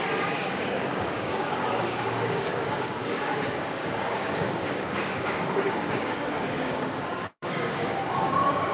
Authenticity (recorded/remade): remade